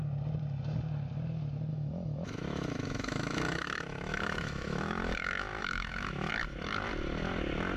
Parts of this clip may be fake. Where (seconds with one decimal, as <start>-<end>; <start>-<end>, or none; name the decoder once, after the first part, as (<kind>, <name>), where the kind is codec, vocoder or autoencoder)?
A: 1.7-6.3 (autoencoder, DAC-VAE)

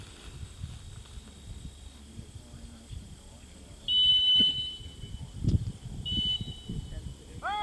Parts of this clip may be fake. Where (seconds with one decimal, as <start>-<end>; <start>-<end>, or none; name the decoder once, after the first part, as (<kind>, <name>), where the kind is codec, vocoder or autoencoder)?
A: 4.1-4.7 (autoencoder, DAC-VAE)

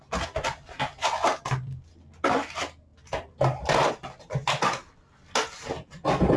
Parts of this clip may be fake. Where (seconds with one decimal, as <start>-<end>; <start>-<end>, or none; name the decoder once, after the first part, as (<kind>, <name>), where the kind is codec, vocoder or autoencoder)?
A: none